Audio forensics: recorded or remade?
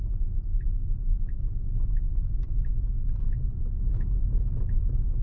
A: recorded